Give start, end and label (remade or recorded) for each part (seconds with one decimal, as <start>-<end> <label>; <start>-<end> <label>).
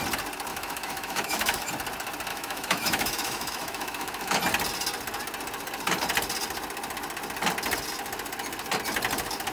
0.0-0.5 recorded; 0.5-1.7 remade; 1.7-2.3 recorded; 2.3-4.4 remade; 4.4-9.5 recorded